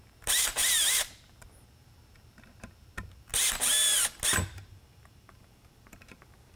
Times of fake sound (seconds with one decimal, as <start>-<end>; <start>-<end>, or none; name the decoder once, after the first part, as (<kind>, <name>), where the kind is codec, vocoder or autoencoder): 0.0-3.3 (vocoder, BigVGAN v2); 4.7-6.6